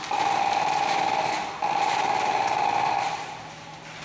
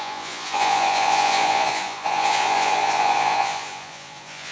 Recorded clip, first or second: first